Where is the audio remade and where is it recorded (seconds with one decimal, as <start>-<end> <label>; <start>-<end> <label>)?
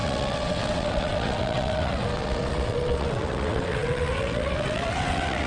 0.0-5.5 remade